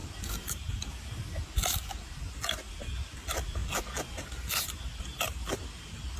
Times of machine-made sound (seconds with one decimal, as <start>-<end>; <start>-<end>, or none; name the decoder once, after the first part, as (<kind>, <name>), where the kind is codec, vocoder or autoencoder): none